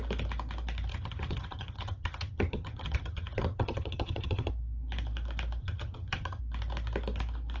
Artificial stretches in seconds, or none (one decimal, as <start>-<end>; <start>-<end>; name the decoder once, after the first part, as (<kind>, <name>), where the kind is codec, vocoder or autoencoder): 0.9-4.5 (vocoder, HiFi-GAN); 5.6-6.4